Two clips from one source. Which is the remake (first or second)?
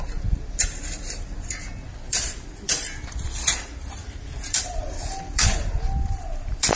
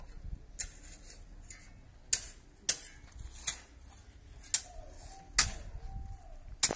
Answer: first